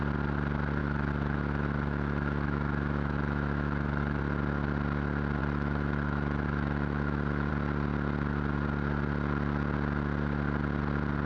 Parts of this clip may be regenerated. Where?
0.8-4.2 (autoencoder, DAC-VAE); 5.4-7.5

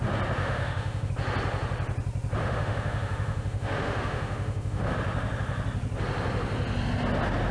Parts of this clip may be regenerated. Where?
0.4-1.1 (autoencoder, DAC-VAE); 2.4-4.9

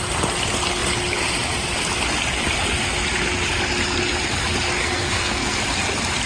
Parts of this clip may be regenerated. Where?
4.8-5.6 (codec, SNAC)

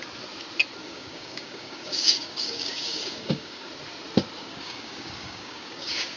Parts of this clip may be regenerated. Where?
0.8-3.7 (codec, DAC); 4.4-6.2

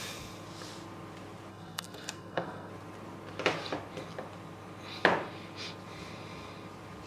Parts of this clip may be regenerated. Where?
1.5-2.7 (codec, SNAC)

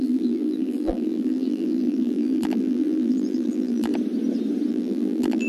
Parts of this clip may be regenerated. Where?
0.0-3.9 (vocoder, BigVGAN v2); 4.7-5.5